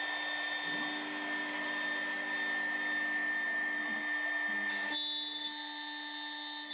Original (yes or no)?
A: yes